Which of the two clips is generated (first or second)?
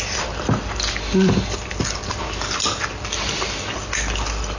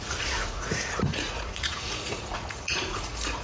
second